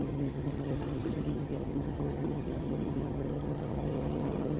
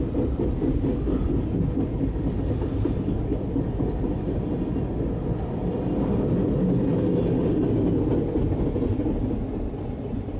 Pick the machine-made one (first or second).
first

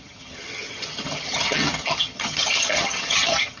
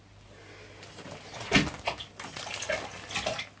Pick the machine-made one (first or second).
first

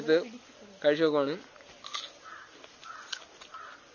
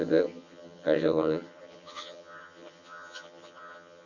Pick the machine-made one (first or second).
second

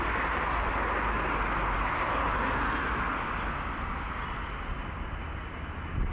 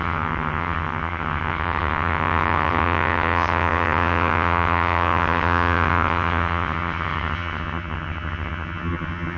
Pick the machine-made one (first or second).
second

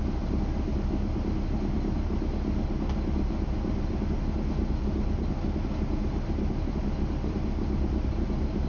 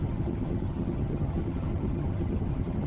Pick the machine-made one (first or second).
second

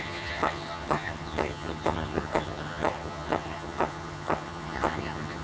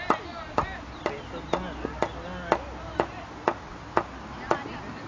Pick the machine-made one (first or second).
first